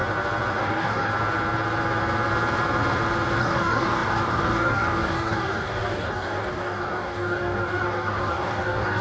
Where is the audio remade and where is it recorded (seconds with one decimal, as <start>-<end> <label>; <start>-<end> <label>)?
0.0-0.6 recorded; 0.6-1.1 remade; 1.1-3.4 recorded; 3.4-9.0 remade